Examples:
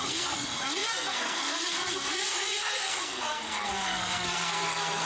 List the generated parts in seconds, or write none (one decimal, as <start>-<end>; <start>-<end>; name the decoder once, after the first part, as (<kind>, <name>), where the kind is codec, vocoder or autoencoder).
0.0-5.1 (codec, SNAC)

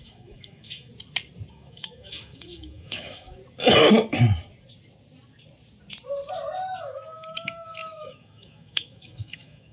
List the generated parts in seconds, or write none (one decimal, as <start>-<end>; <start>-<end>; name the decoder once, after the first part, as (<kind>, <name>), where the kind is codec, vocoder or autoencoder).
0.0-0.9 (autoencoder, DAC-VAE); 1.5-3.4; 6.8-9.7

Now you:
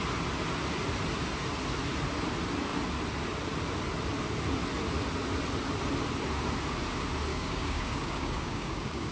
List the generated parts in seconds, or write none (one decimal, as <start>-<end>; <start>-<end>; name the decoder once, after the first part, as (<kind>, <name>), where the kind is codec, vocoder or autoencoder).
7.3-9.1 (codec, DAC)

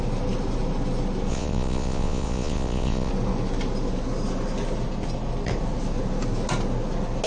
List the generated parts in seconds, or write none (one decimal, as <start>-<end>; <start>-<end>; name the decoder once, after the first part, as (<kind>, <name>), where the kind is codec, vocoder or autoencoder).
1.3-3.1 (vocoder, Vocos)